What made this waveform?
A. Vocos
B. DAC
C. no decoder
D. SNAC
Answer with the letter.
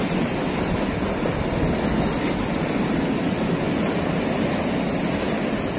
C